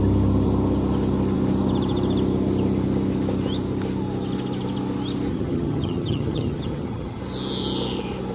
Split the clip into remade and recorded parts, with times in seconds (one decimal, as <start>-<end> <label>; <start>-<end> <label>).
0.0-5.3 recorded; 5.3-7.2 remade; 7.2-8.3 recorded